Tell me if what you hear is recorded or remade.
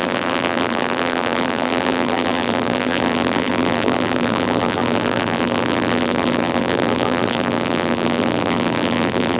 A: remade